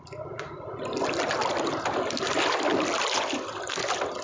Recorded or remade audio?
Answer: recorded